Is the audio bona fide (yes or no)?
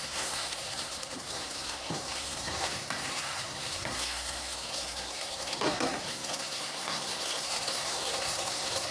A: no